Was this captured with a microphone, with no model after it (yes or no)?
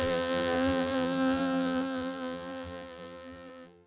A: no